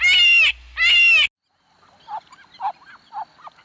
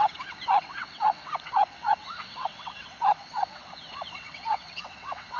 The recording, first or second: first